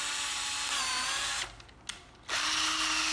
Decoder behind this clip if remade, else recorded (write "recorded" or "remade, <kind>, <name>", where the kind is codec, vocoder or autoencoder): recorded